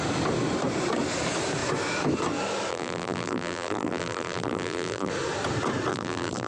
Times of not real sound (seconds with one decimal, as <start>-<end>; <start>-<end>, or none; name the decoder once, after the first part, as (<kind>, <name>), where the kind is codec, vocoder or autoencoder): 2.7-5.1 (vocoder, BigVGAN v2); 5.9-6.5